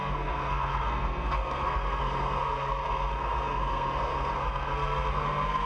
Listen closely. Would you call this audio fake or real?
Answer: fake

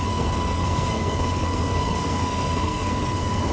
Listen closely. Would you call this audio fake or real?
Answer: fake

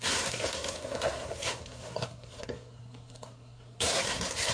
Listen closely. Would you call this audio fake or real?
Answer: fake